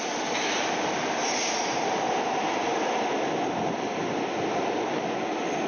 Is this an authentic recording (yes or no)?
yes